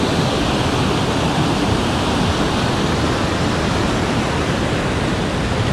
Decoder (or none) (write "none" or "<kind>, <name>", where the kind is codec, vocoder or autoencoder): none